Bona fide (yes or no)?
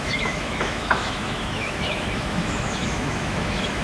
no